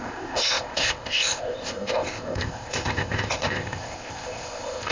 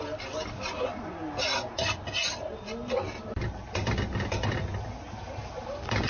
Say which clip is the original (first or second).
second